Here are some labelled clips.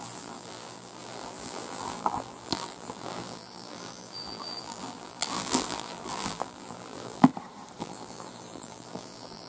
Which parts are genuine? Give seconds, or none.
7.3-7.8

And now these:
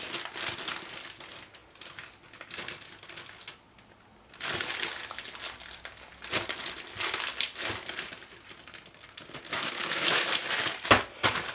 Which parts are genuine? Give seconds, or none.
0.0-9.5; 10.3-11.5

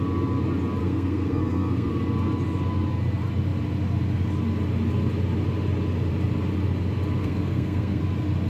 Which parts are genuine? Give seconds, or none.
0.0-0.8; 1.9-7.2; 8.0-8.5

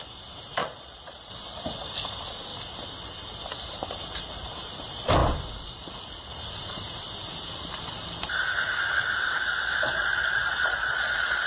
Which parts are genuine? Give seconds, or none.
0.0-0.6; 1.3-9.4

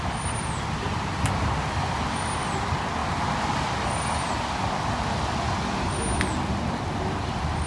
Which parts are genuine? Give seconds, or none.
0.0-7.7

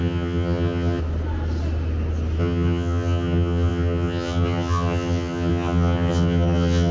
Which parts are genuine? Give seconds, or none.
1.0-2.4